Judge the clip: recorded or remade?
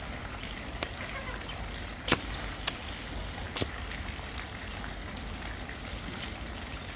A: recorded